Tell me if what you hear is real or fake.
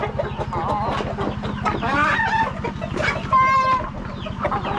real